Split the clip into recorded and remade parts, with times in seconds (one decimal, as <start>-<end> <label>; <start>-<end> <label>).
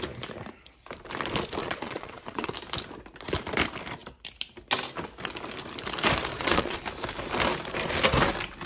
0.0-1.6 recorded; 1.6-2.5 remade; 2.5-6.3 recorded; 6.3-6.8 remade; 6.8-8.7 recorded